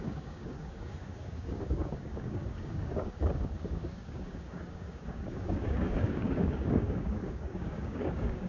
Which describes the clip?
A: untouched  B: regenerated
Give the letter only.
B